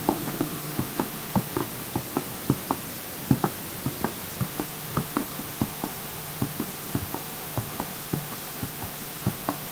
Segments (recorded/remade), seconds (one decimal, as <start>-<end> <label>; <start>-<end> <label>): 0.0-1.6 remade; 1.6-4.4 recorded; 4.4-9.7 remade